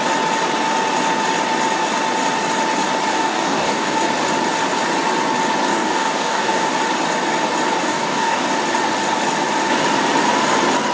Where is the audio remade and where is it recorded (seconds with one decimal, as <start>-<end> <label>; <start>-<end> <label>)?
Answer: 0.0-3.1 recorded; 3.1-4.0 remade; 4.0-5.7 recorded; 5.7-6.7 remade; 6.7-7.8 recorded; 7.8-8.4 remade; 8.4-10.9 recorded